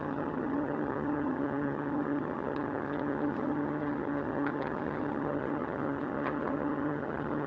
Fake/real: fake